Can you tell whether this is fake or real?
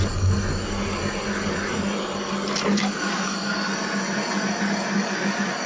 real